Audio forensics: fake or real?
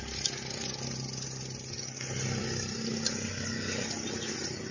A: real